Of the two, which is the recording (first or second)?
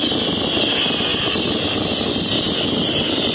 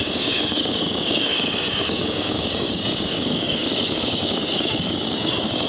first